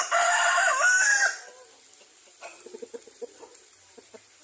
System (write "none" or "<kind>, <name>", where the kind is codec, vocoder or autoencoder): none